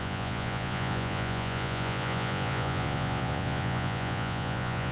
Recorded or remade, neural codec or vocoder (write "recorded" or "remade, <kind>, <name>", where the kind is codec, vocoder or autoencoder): remade, vocoder, Vocos